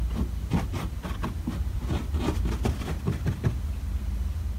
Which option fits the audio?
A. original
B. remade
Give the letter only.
B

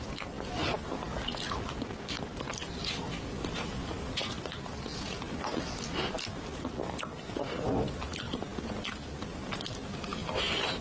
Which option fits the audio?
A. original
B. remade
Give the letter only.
A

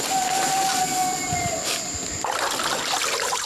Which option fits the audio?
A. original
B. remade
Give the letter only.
A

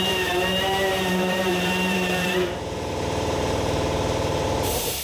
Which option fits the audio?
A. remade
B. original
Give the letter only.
A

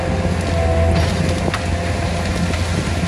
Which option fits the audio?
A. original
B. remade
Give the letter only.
A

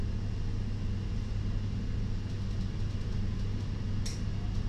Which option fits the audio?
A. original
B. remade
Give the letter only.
A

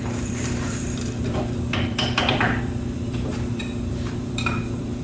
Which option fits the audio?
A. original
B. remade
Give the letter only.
B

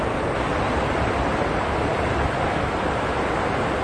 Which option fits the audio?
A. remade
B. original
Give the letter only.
B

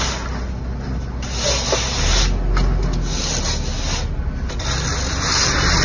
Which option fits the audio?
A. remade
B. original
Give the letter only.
B